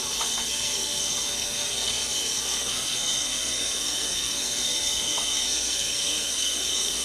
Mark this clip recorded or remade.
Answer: remade